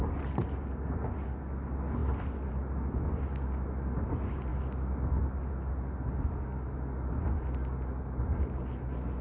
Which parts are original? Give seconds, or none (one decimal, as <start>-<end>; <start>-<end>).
0.0-9.2